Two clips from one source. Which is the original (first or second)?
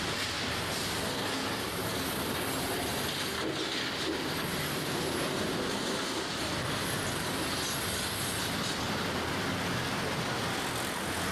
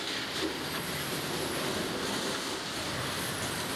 first